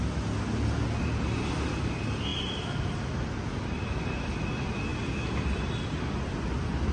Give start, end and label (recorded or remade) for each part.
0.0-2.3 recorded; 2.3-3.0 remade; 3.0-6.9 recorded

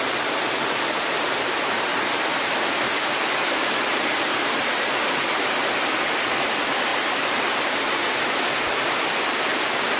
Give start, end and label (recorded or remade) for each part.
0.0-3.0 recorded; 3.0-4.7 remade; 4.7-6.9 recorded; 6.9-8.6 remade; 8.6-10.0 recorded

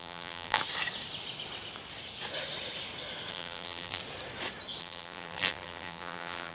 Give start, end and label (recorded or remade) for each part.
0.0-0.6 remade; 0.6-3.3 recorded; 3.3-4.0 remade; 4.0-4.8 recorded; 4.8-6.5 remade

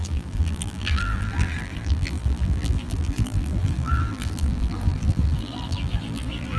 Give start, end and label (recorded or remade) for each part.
0.0-6.6 remade

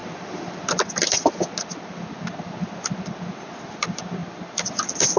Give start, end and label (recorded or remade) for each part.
0.0-4.2 recorded; 4.2-4.7 remade; 4.7-5.2 recorded

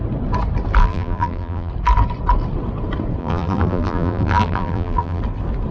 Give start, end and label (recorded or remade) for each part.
0.0-0.8 recorded; 0.8-1.7 remade; 1.7-3.2 recorded; 3.2-5.2 remade; 5.2-5.7 recorded

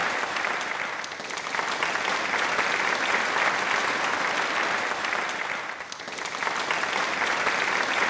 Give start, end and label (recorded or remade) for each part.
0.0-0.7 remade; 0.7-8.1 recorded

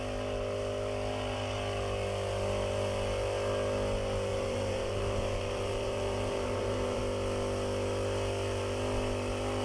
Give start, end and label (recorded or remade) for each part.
0.0-4.3 recorded; 4.3-7.0 remade; 7.0-9.6 recorded